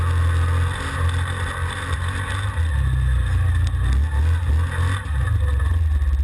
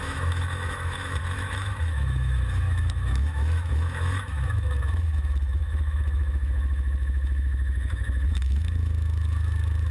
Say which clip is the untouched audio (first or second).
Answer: first